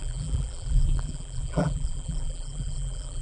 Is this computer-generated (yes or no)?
yes